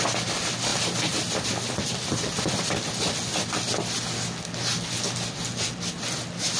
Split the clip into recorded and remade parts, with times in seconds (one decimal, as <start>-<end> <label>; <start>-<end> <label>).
0.0-0.7 recorded; 0.7-2.5 remade; 2.5-6.6 recorded

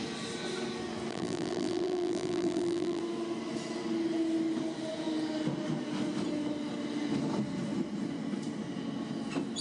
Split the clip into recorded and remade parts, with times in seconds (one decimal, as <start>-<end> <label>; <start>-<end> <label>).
0.0-1.1 recorded; 1.1-3.0 remade; 3.0-9.6 recorded

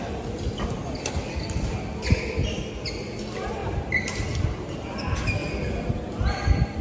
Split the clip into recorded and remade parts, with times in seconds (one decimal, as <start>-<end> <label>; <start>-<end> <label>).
0.0-6.8 recorded

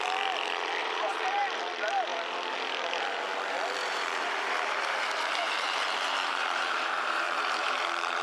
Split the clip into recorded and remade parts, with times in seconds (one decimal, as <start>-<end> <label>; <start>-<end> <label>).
0.0-0.8 recorded; 0.8-1.6 remade; 1.6-3.8 recorded; 3.8-8.2 remade